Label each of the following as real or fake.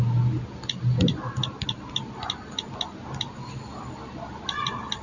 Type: real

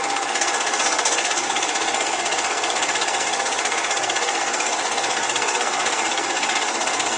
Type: fake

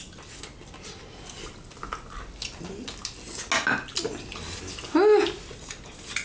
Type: real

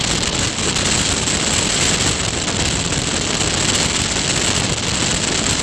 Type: real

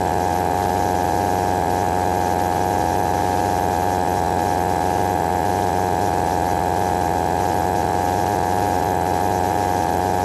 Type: real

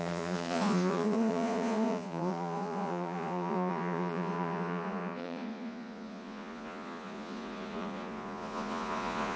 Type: fake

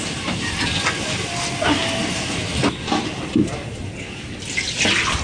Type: real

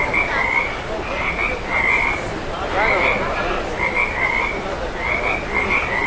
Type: real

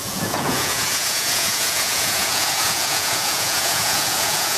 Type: fake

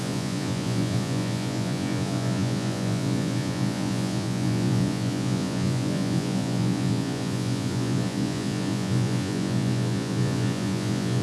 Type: fake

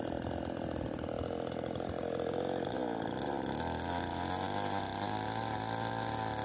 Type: real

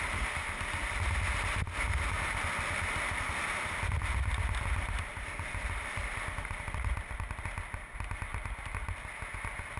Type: real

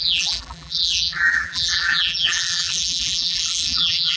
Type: fake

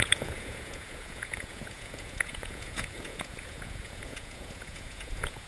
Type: fake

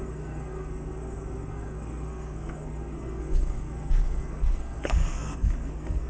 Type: fake